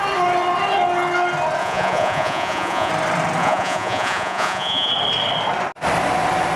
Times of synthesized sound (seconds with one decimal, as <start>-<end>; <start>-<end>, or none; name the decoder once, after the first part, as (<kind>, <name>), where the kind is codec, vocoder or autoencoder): 1.6-2.9 (vocoder, Vocos); 3.4-4.9